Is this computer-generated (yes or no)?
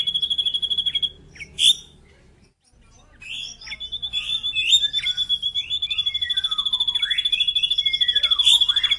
no